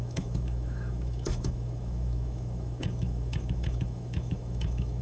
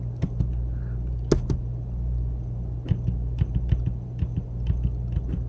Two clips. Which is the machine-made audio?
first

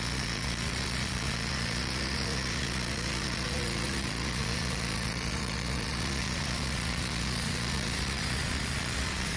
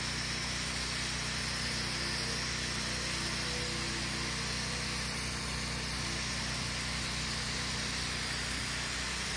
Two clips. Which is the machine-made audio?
first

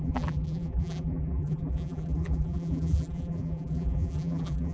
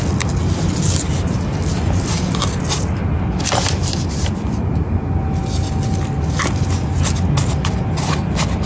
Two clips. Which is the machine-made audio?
first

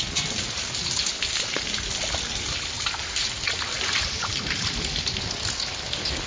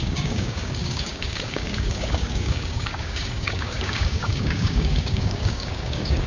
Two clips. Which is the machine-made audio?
second